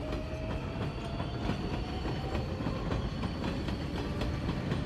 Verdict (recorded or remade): recorded